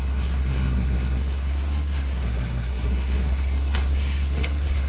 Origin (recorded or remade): remade